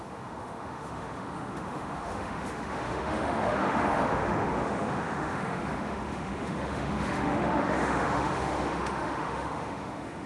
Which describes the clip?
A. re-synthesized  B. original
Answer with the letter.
A